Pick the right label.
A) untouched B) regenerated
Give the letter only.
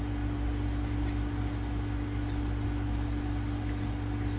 A